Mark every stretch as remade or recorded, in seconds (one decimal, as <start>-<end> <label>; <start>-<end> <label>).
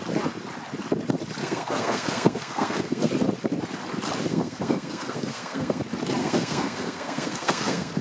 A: 0.0-1.4 recorded; 1.4-3.1 remade; 3.1-4.3 recorded; 4.3-5.8 remade; 5.8-6.2 recorded; 6.2-8.0 remade